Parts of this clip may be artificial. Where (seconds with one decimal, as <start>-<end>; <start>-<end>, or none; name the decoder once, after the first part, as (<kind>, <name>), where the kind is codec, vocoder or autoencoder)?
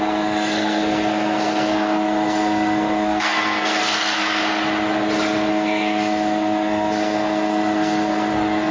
0.0-4.4 (codec, SNAC); 5.5-8.7